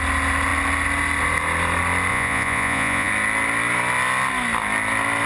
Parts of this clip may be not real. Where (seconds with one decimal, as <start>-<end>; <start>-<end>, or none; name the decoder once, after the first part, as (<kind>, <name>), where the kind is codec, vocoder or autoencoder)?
2.1-3.1 (vocoder, Vocos)